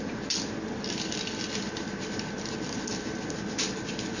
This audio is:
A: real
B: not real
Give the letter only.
A